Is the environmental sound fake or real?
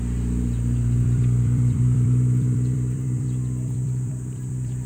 fake